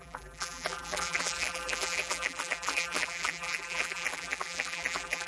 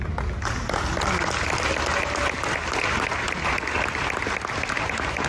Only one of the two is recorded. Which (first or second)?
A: second